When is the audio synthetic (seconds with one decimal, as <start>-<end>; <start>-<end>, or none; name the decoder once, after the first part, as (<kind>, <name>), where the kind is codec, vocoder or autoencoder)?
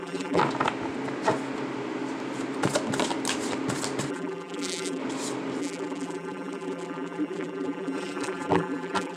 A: 0.0-0.4 (vocoder, BigVGAN v2); 4.1-5.0; 5.6-9.2